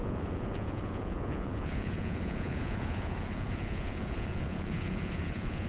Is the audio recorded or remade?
remade